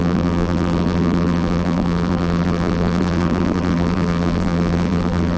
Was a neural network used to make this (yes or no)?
yes